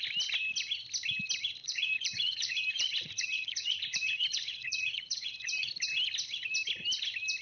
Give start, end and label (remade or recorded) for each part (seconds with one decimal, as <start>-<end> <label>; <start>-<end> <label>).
0.0-1.6 recorded; 1.6-5.7 remade; 5.7-7.4 recorded